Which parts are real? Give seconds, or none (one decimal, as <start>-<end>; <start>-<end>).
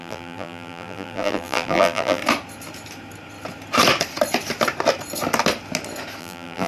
2.2-6.2